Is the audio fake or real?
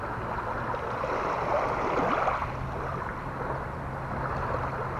real